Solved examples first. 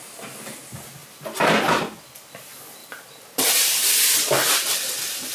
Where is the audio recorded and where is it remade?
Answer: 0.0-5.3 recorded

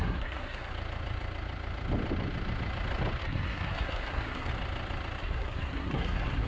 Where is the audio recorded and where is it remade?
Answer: 0.0-0.7 remade; 0.7-3.2 recorded; 3.2-4.5 remade; 4.5-5.2 recorded; 5.2-6.5 remade

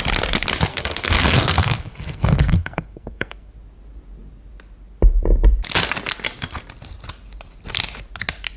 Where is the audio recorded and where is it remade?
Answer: 0.0-0.7 recorded; 0.7-3.5 remade; 3.5-8.6 recorded

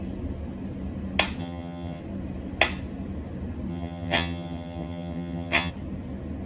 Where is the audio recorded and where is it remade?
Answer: 0.0-1.4 recorded; 1.4-2.0 remade; 2.0-3.7 recorded; 3.7-5.7 remade; 5.7-6.5 recorded

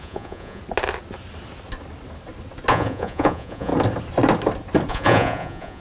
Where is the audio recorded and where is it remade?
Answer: 0.0-0.6 remade; 0.6-2.7 recorded; 2.7-3.7 remade; 3.7-4.9 recorded; 4.9-5.8 remade

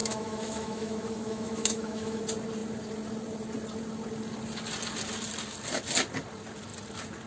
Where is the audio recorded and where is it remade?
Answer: 0.0-2.2 remade; 2.2-7.3 recorded

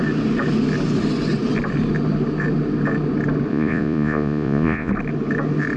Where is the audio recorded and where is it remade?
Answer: 0.0-3.5 recorded; 3.5-4.9 remade; 4.9-5.8 recorded